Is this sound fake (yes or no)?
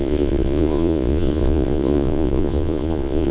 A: yes